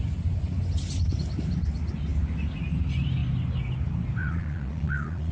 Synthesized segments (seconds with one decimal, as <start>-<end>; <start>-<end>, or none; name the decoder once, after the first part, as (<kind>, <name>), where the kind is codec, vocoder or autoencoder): 4.2-5.3 (vocoder, Vocos)